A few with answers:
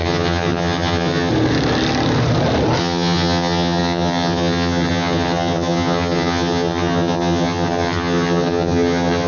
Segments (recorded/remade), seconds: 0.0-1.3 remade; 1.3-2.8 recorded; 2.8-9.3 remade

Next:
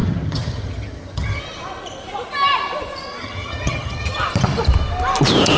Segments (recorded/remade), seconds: 0.0-1.4 remade; 1.4-3.2 recorded; 3.2-4.1 remade; 4.1-5.6 recorded

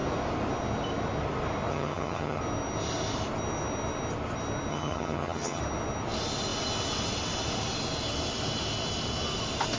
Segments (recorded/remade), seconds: 0.0-1.7 recorded; 1.7-2.4 remade; 2.4-4.7 recorded; 4.7-5.6 remade; 5.6-9.8 recorded